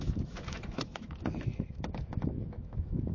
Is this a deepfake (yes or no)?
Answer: yes